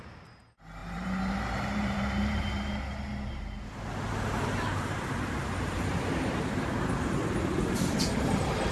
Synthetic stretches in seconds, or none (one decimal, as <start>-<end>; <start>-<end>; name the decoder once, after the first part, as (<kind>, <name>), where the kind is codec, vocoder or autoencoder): 0.8-2.8 (vocoder, BigVGAN v2)